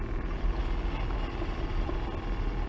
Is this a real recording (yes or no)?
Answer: yes